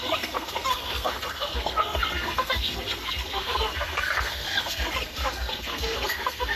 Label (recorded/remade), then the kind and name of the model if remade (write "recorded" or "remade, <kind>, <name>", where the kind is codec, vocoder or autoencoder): remade, codec, SNAC